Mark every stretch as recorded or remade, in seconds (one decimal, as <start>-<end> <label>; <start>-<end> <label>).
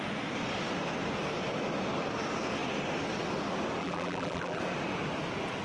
0.0-3.8 recorded; 3.8-4.6 remade; 4.6-5.6 recorded